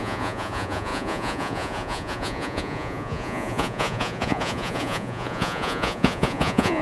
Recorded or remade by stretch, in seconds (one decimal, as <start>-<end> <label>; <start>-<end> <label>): 0.0-6.8 remade